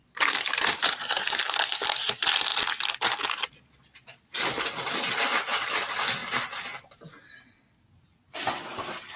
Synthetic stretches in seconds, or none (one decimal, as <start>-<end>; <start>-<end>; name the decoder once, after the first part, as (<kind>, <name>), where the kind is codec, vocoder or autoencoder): 0.0-2.5 (vocoder, BigVGAN v2); 3.2-6.2; 6.8-9.2